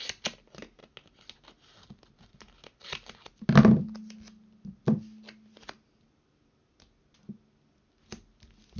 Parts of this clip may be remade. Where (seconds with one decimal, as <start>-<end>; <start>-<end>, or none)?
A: none